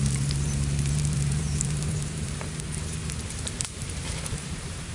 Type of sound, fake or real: fake